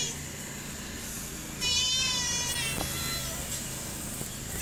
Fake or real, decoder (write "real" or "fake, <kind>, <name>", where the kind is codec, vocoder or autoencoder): real